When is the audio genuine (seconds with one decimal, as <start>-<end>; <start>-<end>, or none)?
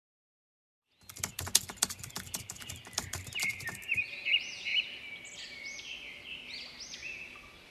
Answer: 0.0-7.7